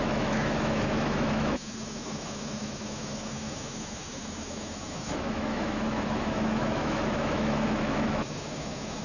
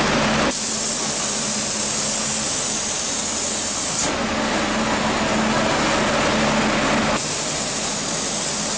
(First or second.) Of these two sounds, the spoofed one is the first